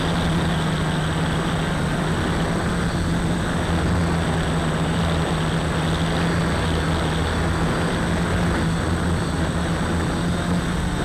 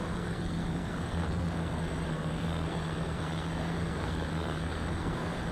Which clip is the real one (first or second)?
first